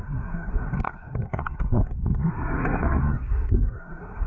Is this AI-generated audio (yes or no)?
yes